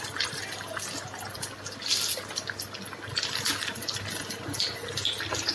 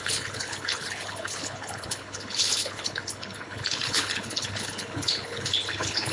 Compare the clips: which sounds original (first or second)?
first